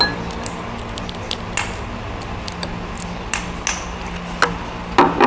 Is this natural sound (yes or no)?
yes